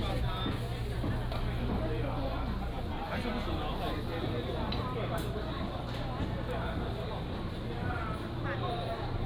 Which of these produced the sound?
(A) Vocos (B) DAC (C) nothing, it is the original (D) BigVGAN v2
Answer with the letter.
C